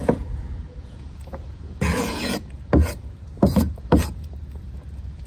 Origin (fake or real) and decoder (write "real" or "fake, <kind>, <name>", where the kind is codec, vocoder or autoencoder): fake, vocoder, Vocos